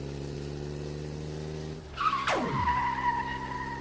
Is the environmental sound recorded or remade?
recorded